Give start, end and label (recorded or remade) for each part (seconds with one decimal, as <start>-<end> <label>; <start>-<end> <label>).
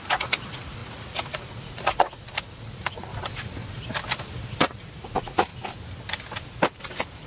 0.0-3.1 remade; 3.1-4.6 recorded; 4.6-5.5 remade; 5.5-6.8 recorded; 6.8-7.3 remade